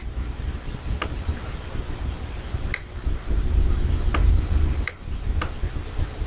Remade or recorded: recorded